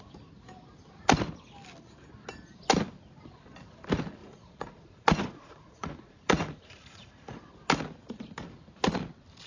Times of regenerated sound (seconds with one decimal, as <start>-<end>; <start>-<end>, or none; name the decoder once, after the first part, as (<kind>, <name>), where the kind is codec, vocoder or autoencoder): 4.2-7.5 (vocoder, Vocos)